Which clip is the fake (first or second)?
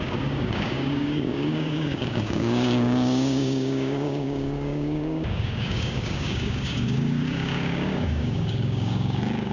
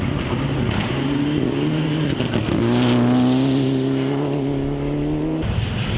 first